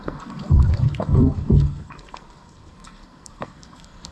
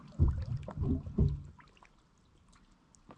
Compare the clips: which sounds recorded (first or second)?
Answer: second